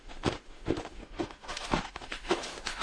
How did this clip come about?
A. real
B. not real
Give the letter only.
B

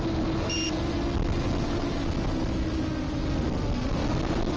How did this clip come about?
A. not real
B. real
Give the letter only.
B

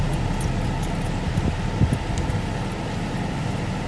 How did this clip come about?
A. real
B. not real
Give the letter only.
A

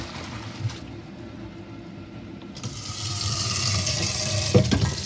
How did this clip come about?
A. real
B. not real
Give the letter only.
A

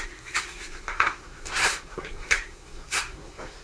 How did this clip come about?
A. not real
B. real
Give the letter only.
A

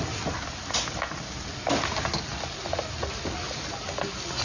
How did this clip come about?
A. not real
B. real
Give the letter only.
B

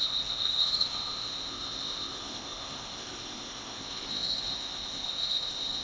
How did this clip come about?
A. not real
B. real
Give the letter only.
A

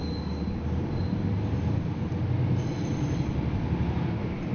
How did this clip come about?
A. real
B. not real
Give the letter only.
B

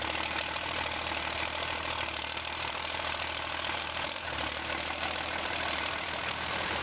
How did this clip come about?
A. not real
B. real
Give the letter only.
A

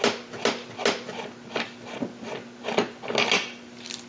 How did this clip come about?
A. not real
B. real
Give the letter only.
B